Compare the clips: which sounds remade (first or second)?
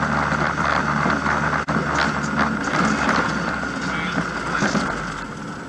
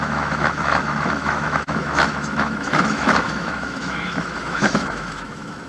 second